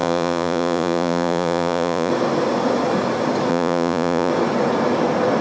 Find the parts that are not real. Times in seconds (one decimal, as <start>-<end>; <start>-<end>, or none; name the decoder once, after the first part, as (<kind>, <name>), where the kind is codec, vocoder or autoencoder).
0.0-2.1 (vocoder, Vocos); 3.5-4.3

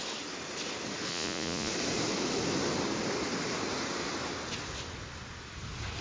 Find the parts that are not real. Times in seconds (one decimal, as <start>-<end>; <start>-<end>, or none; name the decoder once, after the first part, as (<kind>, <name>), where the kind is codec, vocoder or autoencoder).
1.1-1.7 (vocoder, Vocos)

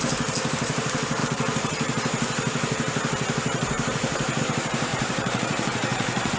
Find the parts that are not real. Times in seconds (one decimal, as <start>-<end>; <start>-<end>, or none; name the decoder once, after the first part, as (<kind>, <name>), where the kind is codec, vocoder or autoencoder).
4.9-6.4 (vocoder, Vocos)

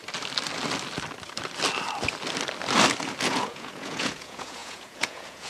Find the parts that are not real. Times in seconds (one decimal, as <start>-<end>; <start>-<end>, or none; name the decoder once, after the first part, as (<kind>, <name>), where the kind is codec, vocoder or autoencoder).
3.3-5.5 (vocoder, Vocos)

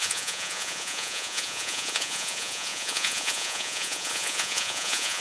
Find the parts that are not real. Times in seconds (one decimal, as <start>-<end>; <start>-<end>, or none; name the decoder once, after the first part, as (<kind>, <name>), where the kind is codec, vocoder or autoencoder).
0.0-5.2 (vocoder, Vocos)